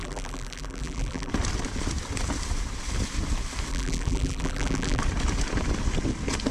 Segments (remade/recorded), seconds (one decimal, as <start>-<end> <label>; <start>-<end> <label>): 0.0-1.3 remade; 1.3-3.7 recorded; 3.7-5.0 remade; 5.0-6.5 recorded